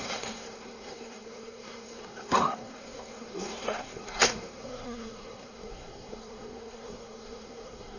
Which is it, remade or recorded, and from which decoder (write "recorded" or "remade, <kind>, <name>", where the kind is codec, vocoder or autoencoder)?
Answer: remade, codec, SNAC